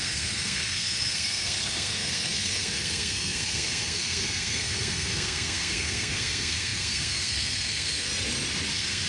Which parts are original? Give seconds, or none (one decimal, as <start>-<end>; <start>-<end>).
8.1-8.7